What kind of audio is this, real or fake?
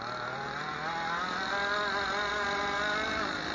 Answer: real